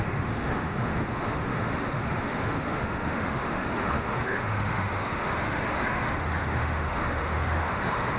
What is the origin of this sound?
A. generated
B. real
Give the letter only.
A